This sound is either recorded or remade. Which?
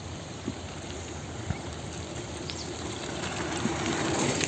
recorded